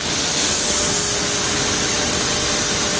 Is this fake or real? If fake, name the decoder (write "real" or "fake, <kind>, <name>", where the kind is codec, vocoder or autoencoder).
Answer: real